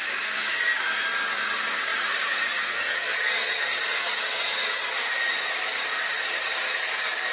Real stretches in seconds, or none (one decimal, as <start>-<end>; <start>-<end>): none